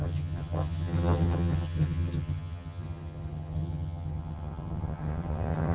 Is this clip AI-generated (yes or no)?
yes